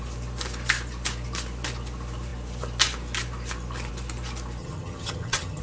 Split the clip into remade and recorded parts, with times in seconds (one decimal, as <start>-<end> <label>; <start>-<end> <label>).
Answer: 0.0-4.6 recorded; 4.6-5.6 remade